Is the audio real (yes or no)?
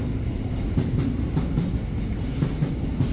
yes